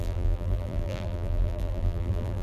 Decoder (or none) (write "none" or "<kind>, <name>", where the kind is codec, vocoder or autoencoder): vocoder, BigVGAN v2